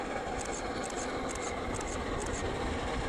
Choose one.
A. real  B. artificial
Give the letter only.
A